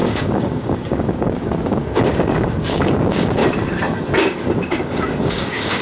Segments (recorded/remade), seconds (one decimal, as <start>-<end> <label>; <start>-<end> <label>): 0.0-3.4 remade; 3.4-4.2 recorded; 4.2-5.8 remade